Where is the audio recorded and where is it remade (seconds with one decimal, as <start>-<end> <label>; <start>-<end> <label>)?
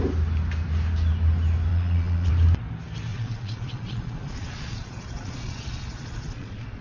0.0-1.7 recorded; 1.7-2.3 remade; 2.3-3.1 recorded; 3.1-6.8 remade